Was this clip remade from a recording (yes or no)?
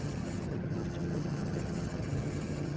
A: yes